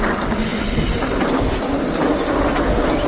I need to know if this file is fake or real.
real